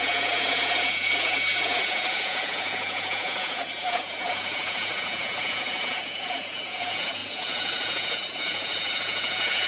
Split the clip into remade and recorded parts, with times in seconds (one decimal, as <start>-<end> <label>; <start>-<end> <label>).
0.0-9.7 remade